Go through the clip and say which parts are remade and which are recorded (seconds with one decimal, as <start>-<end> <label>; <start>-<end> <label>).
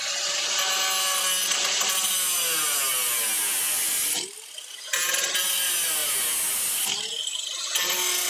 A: 0.0-8.3 recorded